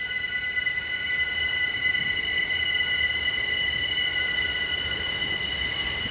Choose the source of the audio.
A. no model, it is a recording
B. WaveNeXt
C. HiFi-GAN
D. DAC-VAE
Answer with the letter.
A